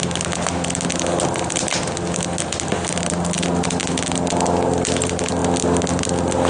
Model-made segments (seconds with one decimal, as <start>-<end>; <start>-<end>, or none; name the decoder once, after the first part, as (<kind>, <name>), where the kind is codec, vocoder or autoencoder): none